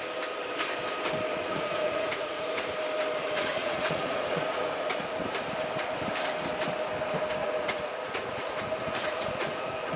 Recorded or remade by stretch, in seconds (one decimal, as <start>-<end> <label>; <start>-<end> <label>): 0.0-1.3 recorded; 1.3-2.7 remade; 2.7-3.6 recorded; 3.6-5.2 remade; 5.2-7.4 recorded; 7.4-10.0 remade